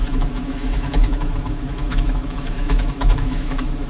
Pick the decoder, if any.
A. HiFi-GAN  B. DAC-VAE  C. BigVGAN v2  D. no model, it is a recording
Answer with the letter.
B